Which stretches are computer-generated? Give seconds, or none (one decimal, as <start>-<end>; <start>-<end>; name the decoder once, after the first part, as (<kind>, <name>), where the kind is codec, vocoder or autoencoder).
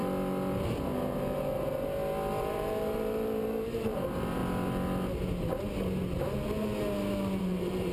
2.4-4.4 (vocoder, BigVGAN v2); 7.4-7.9